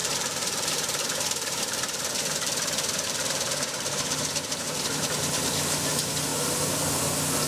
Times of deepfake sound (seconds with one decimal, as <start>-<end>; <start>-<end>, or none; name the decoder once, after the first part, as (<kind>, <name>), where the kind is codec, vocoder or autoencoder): 0.0-4.3 (vocoder, BigVGAN v2)